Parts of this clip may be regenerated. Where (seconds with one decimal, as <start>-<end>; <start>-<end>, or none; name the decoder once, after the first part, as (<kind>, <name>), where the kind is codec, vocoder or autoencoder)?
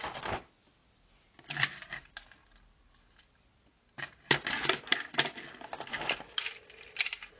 none